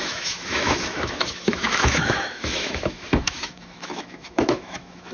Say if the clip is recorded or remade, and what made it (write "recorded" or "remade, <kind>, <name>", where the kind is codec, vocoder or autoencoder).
remade, autoencoder, DAC-VAE